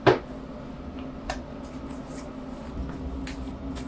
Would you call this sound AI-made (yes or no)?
no